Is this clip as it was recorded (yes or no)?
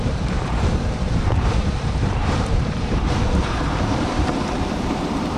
no